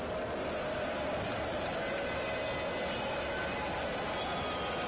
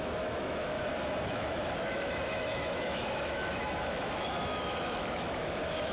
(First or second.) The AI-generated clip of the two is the second